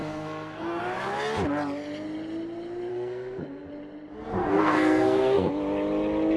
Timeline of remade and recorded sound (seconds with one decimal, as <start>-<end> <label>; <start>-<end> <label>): 0.0-0.8 remade; 0.8-2.9 recorded; 2.9-3.7 remade; 3.7-4.4 recorded; 4.4-5.5 remade; 5.5-6.4 recorded